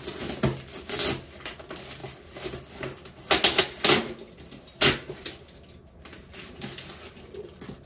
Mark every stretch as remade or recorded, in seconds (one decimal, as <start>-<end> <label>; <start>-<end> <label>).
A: 0.0-7.9 recorded

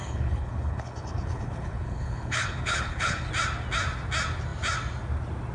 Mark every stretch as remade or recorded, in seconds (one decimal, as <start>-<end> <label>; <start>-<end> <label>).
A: 0.0-3.3 remade; 3.3-5.5 recorded

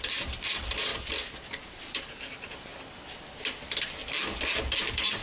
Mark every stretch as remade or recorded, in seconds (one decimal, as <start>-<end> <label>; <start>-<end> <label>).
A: 0.0-5.2 recorded

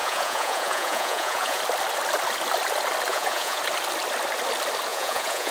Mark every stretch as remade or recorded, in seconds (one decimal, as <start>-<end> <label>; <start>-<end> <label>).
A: 0.0-1.6 remade; 1.6-3.1 recorded; 3.1-3.6 remade; 3.6-4.9 recorded; 4.9-5.5 remade